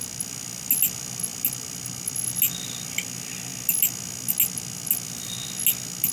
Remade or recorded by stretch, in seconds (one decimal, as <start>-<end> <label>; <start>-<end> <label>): 0.0-6.1 recorded